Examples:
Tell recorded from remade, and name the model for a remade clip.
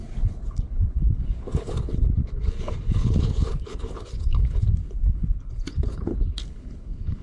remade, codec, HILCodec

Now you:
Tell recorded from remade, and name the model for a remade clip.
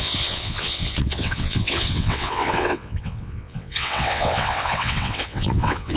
remade, vocoder, WaveNeXt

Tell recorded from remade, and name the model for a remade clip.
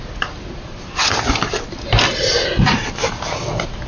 recorded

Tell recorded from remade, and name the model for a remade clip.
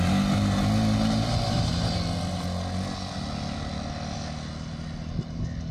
recorded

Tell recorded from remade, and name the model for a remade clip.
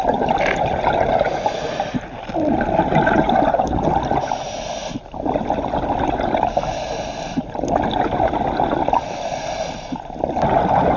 recorded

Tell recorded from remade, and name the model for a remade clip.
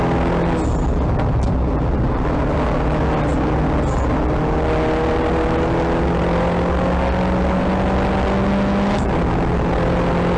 recorded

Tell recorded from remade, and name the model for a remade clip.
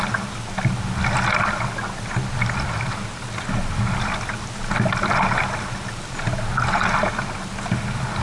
recorded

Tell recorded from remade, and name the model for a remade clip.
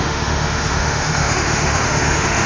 remade, autoencoder, DAC-VAE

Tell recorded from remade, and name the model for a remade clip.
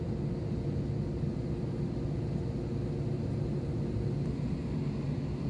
recorded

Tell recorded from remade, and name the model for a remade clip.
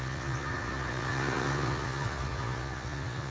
remade, vocoder, Vocos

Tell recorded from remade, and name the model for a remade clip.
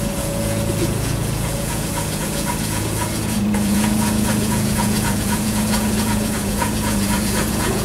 remade, vocoder, Vocos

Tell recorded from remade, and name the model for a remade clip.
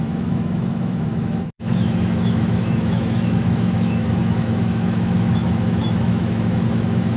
remade, autoencoder, DAC-VAE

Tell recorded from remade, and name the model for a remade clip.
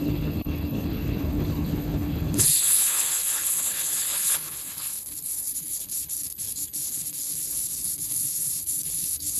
remade, codec, HILCodec